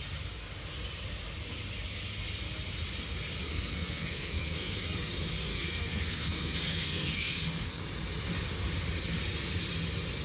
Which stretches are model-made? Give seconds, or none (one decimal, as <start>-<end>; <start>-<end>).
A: 3.4-5.1; 5.5-7.8